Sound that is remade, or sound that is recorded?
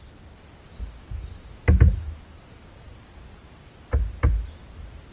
recorded